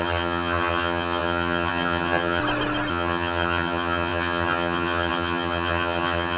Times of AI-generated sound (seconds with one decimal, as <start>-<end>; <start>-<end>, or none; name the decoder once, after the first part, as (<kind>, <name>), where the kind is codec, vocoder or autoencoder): 0.0-2.4 (vocoder, HiFi-GAN); 2.9-6.4